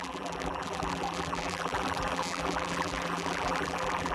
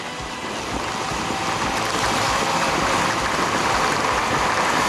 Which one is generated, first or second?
first